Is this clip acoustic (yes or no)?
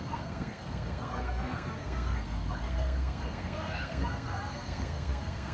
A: no